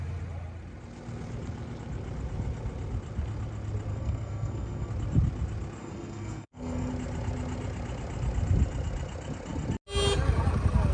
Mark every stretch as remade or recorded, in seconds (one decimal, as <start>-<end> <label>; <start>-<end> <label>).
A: 0.0-3.9 recorded; 3.9-4.9 remade; 4.9-5.8 recorded; 5.8-6.9 remade; 6.9-10.9 recorded

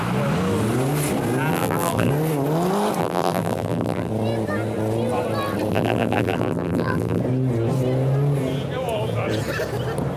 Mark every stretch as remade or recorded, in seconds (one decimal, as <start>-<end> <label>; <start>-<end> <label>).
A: 0.0-1.5 recorded; 1.5-2.1 remade; 2.1-3.0 recorded; 3.0-4.1 remade; 4.1-5.7 recorded; 5.7-7.2 remade; 7.2-10.2 recorded

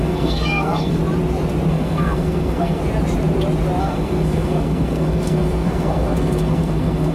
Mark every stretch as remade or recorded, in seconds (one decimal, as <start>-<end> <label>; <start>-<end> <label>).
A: 0.0-1.0 remade; 1.0-1.7 recorded; 1.7-2.8 remade; 2.8-3.8 recorded; 3.8-7.1 remade

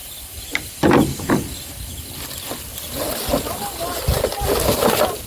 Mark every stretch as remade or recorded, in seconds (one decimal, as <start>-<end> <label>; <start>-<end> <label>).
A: 0.0-5.3 recorded

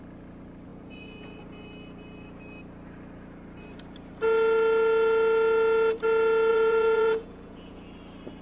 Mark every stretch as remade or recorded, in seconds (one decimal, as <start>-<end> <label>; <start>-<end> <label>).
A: 0.0-0.7 recorded; 0.7-1.4 remade; 1.4-6.5 recorded; 6.5-7.8 remade; 7.8-8.4 recorded

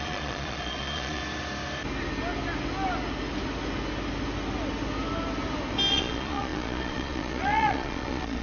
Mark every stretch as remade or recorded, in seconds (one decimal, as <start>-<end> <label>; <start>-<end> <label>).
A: 0.0-1.2 remade; 1.2-5.9 recorded; 5.9-8.4 remade

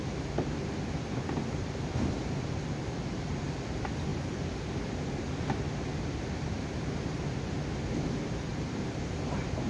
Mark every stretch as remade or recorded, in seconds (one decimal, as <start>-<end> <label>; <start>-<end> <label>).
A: 0.0-4.1 recorded; 4.1-5.6 remade; 5.6-8.5 recorded; 8.5-9.7 remade

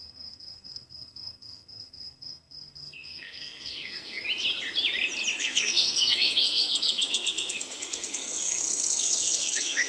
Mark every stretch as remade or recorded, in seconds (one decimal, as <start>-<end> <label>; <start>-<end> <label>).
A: 0.0-4.2 remade; 4.2-5.4 recorded; 5.4-9.9 remade